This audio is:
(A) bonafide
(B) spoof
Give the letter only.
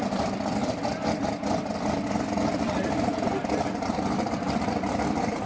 B